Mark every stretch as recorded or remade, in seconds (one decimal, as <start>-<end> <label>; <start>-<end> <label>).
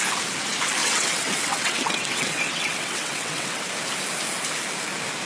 0.0-0.8 recorded; 0.8-3.6 remade; 3.6-5.3 recorded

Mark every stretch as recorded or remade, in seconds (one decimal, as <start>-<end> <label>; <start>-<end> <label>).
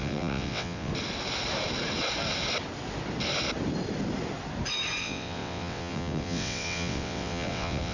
0.0-0.9 remade; 0.9-5.0 recorded; 5.0-7.9 remade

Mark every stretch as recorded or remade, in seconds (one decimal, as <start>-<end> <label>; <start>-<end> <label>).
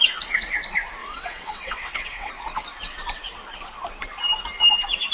0.0-1.0 recorded; 1.0-2.3 remade; 2.3-5.1 recorded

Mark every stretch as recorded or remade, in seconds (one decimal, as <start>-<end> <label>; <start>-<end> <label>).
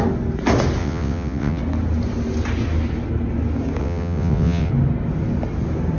0.0-0.8 recorded; 0.8-1.6 remade; 1.6-3.8 recorded; 3.8-4.7 remade; 4.7-6.0 recorded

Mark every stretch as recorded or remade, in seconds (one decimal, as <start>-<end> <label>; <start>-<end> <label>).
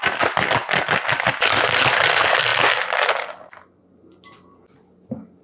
0.0-5.4 recorded